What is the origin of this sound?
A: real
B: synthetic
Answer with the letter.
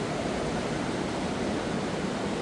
A